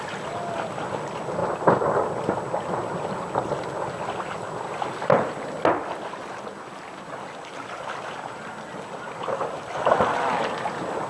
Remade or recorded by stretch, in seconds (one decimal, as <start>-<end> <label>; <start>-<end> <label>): 0.0-11.1 recorded